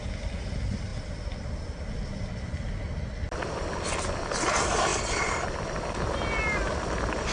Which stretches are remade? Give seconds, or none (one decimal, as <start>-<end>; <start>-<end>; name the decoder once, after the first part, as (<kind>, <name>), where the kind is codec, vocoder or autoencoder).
none